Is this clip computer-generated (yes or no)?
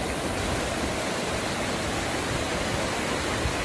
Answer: no